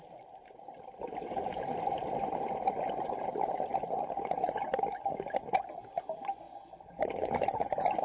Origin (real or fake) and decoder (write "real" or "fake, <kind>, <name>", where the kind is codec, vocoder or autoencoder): real